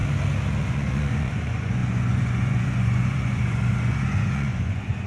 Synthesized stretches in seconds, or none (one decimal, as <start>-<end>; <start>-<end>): 0.6-5.1

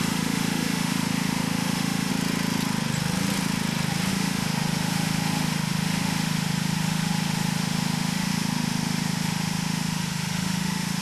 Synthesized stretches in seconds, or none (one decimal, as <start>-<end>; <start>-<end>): 0.0-2.1; 4.1-11.0

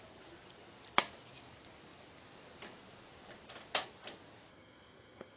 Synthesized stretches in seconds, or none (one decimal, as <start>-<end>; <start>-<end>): 4.5-5.4

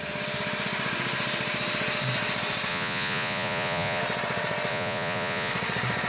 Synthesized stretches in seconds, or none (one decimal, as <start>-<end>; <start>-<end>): 2.7-4.0; 4.7-5.5

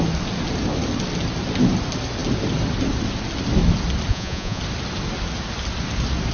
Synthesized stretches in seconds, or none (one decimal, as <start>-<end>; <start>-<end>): 4.1-4.6